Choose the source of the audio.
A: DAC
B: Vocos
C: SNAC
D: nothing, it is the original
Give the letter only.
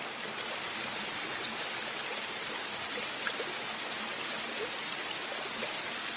D